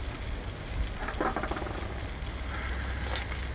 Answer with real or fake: real